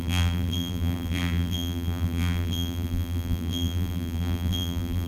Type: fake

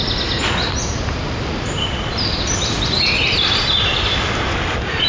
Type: real